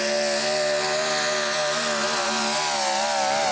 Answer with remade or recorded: recorded